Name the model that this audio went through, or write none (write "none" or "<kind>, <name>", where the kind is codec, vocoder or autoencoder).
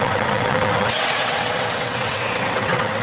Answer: vocoder, WaveNeXt